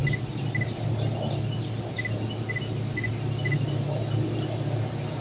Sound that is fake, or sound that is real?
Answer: real